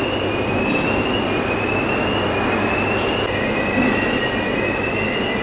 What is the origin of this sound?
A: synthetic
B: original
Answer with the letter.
B